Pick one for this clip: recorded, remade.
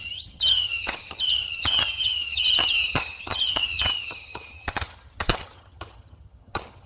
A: remade